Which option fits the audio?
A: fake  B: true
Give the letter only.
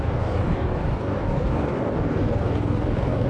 A